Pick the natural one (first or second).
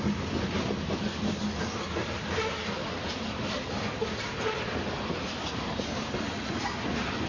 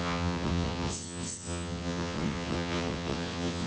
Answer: first